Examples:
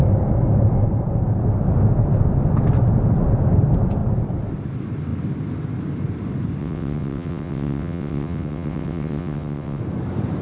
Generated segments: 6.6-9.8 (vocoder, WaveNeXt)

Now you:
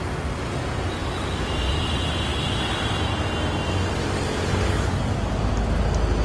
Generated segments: none